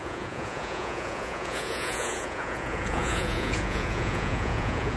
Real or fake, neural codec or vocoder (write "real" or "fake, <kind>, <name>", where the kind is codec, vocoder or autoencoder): fake, vocoder, Vocos